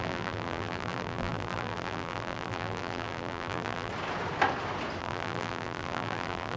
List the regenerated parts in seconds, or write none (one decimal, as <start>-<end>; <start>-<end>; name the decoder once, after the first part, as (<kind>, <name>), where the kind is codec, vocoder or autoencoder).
0.0-3.9 (vocoder, BigVGAN v2); 5.0-6.6